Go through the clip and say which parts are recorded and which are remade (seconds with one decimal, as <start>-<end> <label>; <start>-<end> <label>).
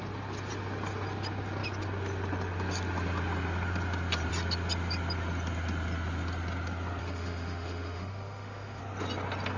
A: 0.0-7.0 recorded; 7.0-8.8 remade; 8.8-9.6 recorded